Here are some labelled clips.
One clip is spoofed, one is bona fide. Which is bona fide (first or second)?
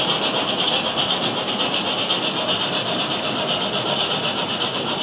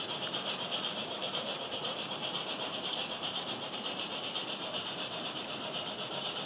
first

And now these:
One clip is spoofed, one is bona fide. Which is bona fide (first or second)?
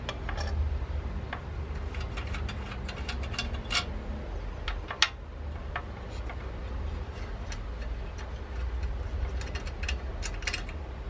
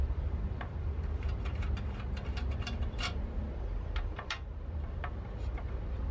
first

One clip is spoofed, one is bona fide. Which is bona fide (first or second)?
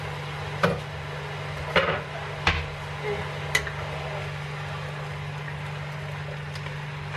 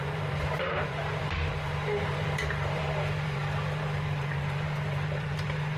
first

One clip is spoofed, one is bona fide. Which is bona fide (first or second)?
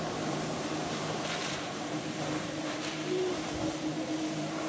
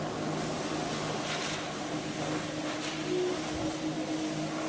second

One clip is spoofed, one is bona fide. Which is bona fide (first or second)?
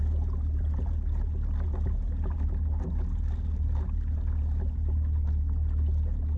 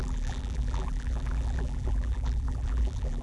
first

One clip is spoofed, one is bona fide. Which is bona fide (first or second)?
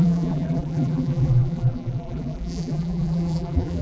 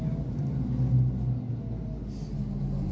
second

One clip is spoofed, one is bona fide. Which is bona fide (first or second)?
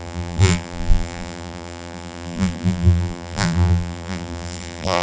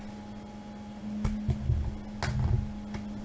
second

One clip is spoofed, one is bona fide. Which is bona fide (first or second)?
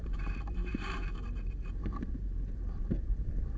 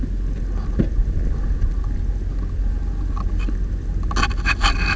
second